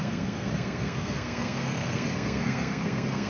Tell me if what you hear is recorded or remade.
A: remade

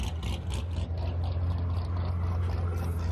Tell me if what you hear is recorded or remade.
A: recorded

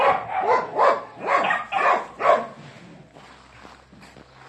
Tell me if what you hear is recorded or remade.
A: recorded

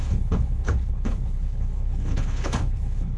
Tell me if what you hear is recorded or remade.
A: remade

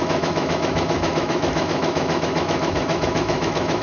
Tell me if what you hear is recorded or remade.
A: remade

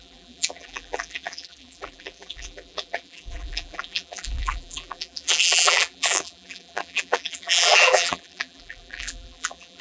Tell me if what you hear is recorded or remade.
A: remade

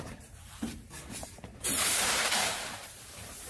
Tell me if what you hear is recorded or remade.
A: remade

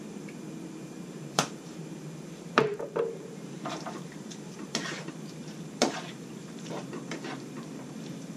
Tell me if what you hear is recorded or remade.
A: remade